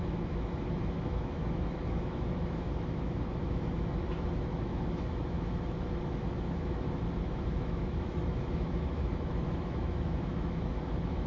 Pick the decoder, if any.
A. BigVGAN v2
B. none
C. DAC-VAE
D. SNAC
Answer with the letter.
C